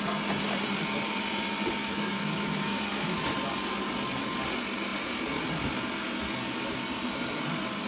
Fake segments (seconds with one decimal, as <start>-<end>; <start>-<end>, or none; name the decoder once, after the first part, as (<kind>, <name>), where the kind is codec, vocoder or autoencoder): 1.8-2.8 (autoencoder, DAC-VAE)